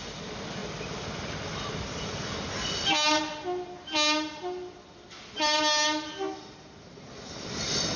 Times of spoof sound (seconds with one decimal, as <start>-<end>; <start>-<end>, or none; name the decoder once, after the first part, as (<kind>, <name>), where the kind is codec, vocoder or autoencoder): none